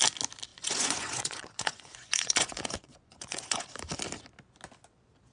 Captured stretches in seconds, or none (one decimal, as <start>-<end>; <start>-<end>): 0.0-0.5; 3.7-5.3